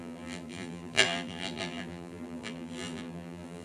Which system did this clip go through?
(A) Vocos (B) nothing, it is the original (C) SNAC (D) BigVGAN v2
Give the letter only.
D